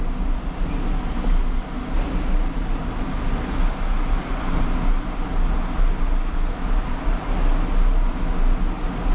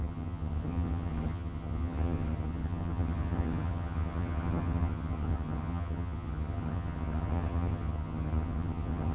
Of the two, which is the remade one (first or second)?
second